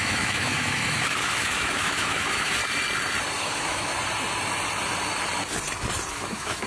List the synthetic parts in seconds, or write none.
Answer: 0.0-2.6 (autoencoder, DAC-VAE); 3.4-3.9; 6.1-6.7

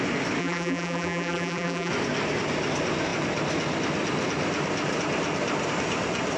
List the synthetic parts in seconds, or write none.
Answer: 0.4-1.9 (vocoder, BigVGAN v2)